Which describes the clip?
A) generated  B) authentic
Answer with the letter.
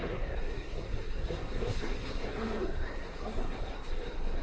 A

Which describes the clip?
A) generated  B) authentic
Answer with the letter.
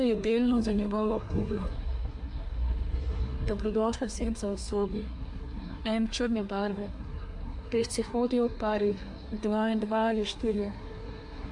A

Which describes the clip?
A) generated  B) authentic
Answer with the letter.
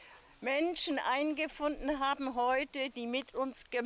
B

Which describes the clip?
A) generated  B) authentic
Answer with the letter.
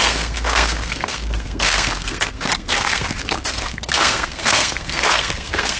A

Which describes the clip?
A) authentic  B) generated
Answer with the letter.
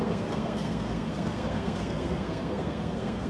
B